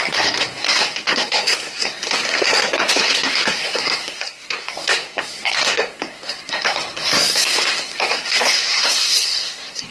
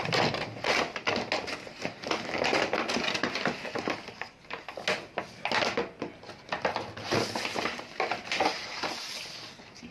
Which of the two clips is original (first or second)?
second